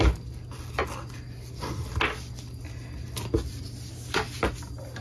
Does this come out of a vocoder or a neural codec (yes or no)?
no